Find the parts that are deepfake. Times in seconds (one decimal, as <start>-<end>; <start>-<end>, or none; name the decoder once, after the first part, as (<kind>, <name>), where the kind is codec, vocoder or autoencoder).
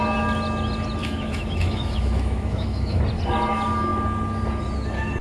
1.0-3.0 (autoencoder, DAC-VAE)